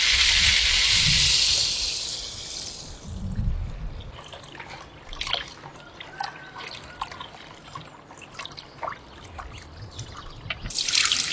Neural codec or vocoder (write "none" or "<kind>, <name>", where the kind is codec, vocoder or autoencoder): none